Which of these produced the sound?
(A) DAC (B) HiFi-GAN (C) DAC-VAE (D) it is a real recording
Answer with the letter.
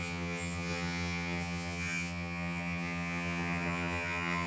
B